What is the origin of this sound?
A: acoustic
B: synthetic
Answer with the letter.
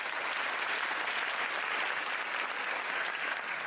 A